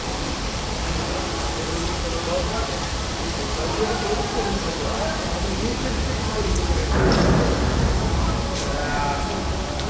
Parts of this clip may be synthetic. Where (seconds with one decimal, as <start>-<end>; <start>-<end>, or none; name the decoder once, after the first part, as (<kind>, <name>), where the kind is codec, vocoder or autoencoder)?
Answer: 0.0-5.7 (vocoder, BigVGAN v2); 6.3-6.8; 7.7-8.8